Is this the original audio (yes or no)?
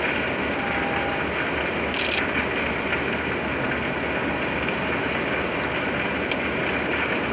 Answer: yes